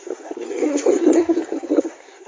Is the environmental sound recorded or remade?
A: remade